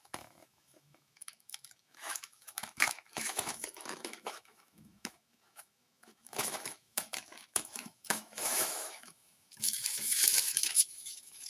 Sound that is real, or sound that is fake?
fake